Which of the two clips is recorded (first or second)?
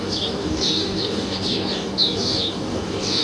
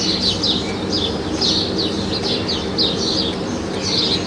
second